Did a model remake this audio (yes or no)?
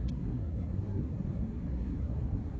yes